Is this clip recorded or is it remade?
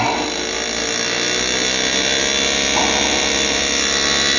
recorded